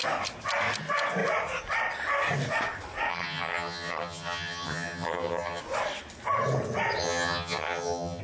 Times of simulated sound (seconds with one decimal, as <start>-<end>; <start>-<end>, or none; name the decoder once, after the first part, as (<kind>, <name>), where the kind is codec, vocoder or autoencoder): 3.1-5.6 (vocoder, HiFi-GAN); 7.0-8.2